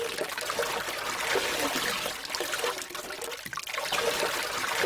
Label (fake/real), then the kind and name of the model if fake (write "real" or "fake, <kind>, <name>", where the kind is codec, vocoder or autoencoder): real